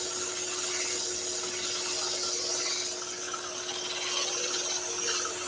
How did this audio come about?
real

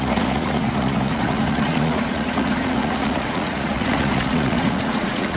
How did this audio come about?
fake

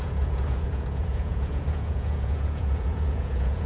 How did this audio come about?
fake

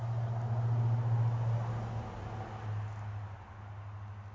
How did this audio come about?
real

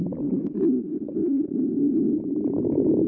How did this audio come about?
real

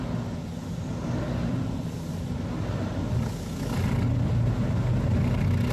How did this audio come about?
real